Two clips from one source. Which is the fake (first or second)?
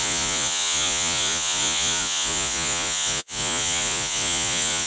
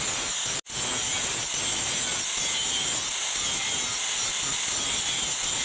first